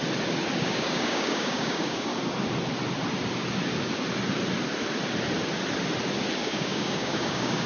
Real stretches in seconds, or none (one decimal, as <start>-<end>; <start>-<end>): 0.0-0.6; 2.1-6.4

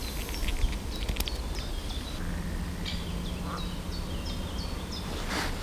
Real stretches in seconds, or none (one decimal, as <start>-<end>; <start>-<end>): 0.0-5.6

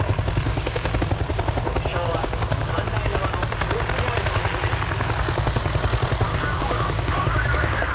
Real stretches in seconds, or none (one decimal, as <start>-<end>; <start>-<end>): 0.0-0.5; 1.0-1.9; 2.7-6.3